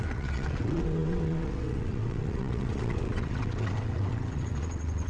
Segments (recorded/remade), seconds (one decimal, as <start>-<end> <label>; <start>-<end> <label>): 0.0-5.1 remade